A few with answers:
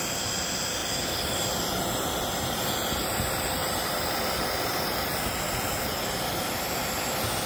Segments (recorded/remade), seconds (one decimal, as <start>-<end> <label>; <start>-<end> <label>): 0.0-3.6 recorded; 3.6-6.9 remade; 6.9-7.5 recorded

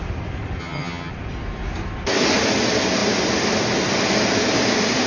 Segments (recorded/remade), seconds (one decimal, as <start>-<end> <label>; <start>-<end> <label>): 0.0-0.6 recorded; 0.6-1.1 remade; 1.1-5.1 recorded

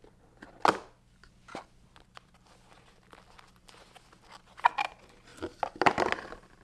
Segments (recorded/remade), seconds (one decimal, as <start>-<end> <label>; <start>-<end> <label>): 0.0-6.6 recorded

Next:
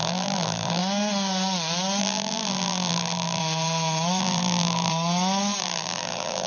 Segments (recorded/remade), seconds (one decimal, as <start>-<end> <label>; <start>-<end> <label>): 0.0-0.8 remade; 0.8-2.0 recorded; 2.0-3.4 remade; 3.4-4.2 recorded; 4.2-4.9 remade; 4.9-5.6 recorded; 5.6-6.5 remade

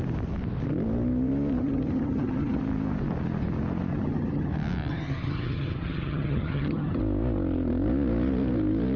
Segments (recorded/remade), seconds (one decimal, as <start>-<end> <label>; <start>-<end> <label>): 0.0-1.6 recorded; 1.6-2.6 remade; 2.6-3.9 recorded; 3.9-4.5 remade; 4.5-4.9 recorded; 4.9-7.0 remade; 7.0-9.0 recorded